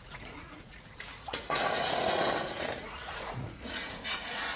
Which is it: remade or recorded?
remade